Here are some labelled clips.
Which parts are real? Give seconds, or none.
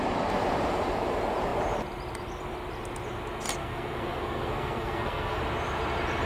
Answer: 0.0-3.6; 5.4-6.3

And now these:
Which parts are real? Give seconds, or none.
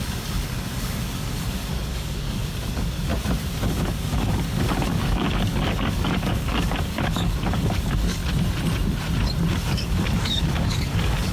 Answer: 3.1-3.7; 8.2-9.5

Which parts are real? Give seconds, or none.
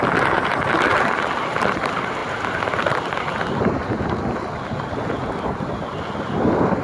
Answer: 0.0-6.8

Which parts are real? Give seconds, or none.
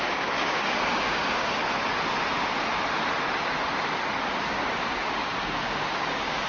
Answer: 1.6-4.4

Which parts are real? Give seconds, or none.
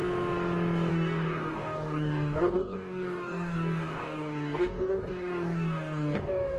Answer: 0.0-0.9